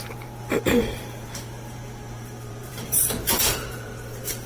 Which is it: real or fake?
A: fake